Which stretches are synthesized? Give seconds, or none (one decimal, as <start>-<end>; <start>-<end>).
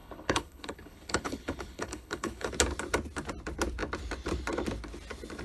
0.0-2.5